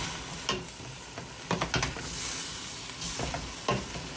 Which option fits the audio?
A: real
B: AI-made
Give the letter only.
A